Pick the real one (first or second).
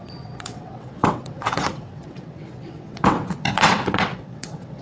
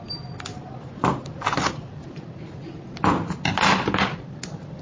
second